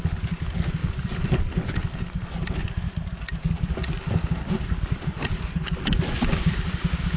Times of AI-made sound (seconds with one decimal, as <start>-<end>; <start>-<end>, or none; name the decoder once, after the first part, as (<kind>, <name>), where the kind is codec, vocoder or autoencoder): 0.8-1.4 (vocoder, BigVGAN v2); 2.6-7.2